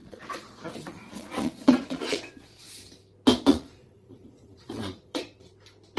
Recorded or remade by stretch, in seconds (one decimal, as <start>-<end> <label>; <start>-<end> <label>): 0.0-2.7 remade; 2.7-3.5 recorded; 3.5-5.5 remade; 5.5-6.0 recorded